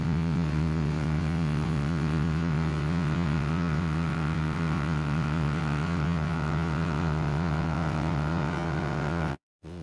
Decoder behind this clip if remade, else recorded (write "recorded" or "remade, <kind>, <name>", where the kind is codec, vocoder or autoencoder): remade, vocoder, WaveNeXt